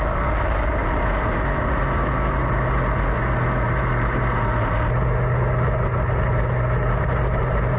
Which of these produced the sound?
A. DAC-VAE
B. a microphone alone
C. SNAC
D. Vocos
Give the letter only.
B